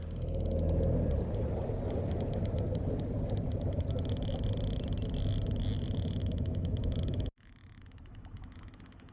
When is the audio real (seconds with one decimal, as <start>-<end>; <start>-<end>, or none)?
0.0-6.2